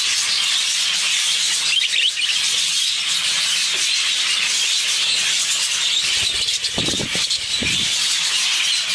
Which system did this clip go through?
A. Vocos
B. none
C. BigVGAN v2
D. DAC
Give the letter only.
B